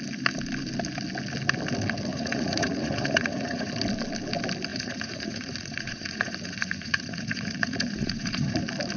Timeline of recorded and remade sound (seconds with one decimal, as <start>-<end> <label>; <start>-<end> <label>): 0.0-2.1 recorded; 2.1-3.7 remade; 3.7-4.7 recorded; 4.7-8.6 remade; 8.6-9.0 recorded